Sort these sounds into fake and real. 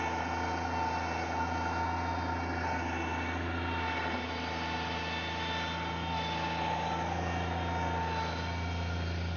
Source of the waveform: real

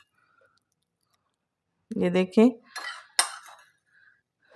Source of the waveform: real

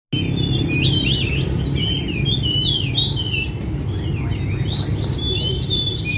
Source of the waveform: real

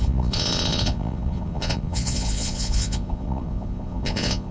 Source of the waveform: fake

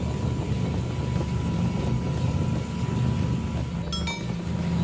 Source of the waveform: real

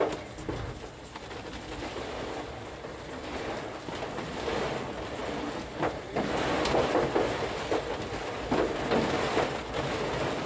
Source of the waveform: real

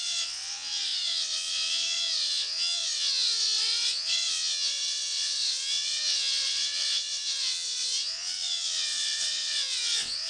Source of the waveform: fake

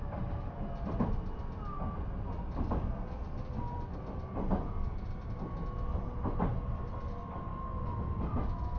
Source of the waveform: real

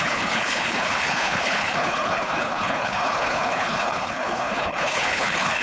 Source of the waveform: fake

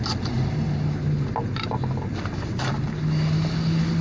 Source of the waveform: real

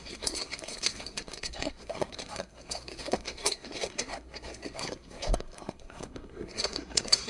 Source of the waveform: fake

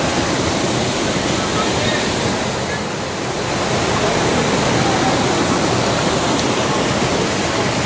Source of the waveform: real